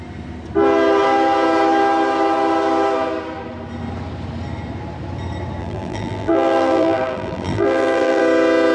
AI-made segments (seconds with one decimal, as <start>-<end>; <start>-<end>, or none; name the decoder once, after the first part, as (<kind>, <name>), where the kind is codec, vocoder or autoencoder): 5.6-8.2 (vocoder, BigVGAN v2)